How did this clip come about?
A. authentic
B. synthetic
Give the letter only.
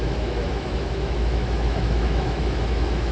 B